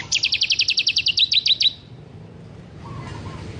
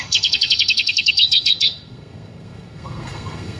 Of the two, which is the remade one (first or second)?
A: second